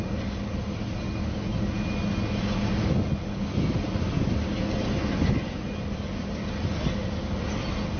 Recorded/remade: recorded